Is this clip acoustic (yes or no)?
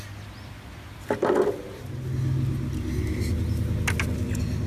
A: yes